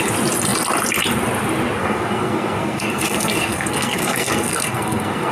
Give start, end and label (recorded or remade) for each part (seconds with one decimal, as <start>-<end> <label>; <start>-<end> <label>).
0.0-1.8 recorded; 1.8-5.3 remade